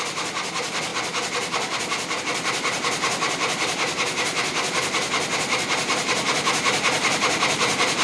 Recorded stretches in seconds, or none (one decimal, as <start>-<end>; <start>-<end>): 0.0-8.0